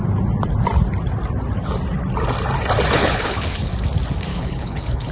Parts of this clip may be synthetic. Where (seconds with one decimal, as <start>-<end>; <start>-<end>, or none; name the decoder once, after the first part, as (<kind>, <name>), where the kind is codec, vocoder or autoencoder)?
3.0-3.7 (codec, HILCodec); 4.3-5.1